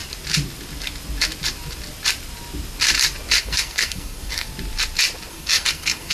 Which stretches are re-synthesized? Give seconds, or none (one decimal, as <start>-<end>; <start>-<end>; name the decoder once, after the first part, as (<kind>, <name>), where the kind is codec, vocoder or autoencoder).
3.4-4.5 (codec, SNAC); 5.3-6.1